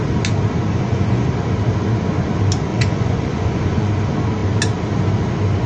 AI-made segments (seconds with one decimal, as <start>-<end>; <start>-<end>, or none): 0.7-1.3; 2.7-3.9